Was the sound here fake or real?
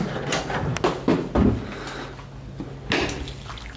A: real